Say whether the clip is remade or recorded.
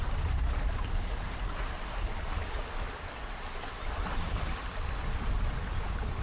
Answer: recorded